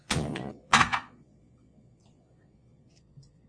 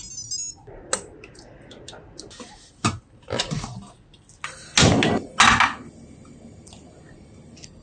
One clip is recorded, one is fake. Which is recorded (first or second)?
second